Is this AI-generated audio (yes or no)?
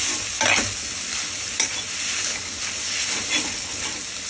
no